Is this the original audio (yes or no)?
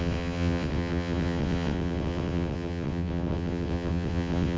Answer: no